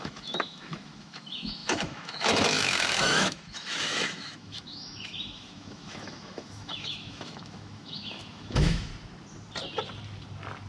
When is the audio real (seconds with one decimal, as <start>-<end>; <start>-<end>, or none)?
8.9-10.7